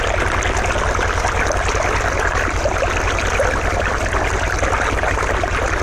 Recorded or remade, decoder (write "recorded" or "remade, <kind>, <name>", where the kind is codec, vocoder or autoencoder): recorded